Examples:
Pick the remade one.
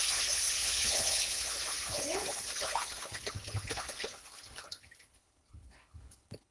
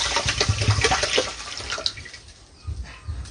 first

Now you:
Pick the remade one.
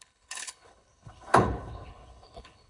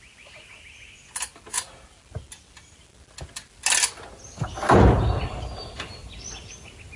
first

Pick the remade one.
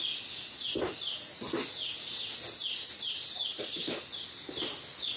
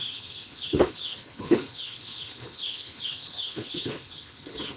second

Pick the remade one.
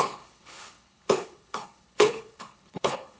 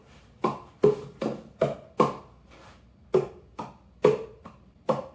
first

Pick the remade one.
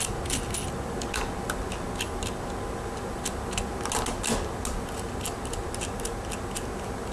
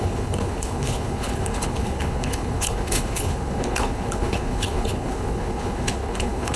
second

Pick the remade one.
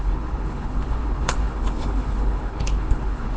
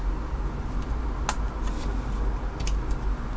first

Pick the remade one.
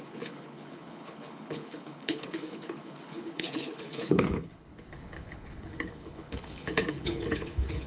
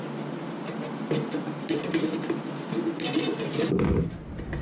first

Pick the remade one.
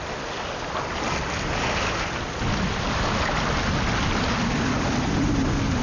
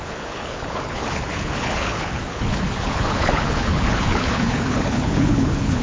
second